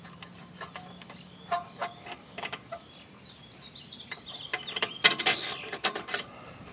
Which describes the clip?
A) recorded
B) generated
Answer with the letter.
A